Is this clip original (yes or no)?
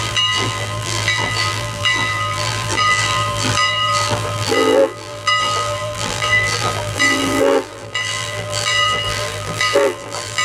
no